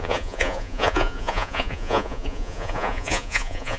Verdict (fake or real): fake